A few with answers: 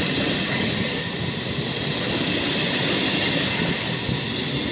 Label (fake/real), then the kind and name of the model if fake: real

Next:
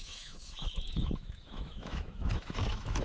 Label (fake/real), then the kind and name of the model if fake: fake, autoencoder, DAC-VAE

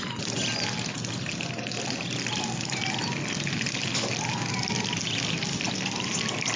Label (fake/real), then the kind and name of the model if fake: real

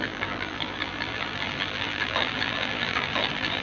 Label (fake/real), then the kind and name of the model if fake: fake, vocoder, BigVGAN v2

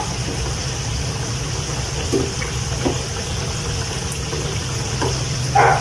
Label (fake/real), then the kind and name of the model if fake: real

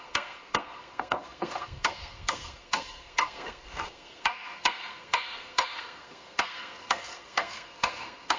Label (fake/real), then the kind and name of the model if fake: fake, codec, SNAC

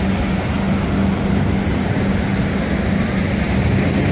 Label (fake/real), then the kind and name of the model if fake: real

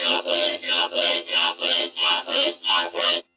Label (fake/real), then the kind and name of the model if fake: fake, vocoder, HiFi-GAN